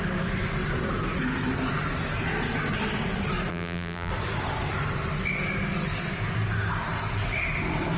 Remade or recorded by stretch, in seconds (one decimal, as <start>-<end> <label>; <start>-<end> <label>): 0.0-3.5 recorded; 3.5-4.1 remade; 4.1-8.0 recorded